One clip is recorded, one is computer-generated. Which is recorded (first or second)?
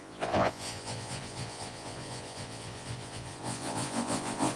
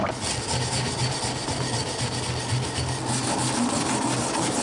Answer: second